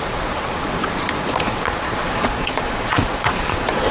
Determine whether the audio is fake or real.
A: fake